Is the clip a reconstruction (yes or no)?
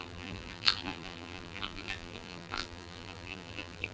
yes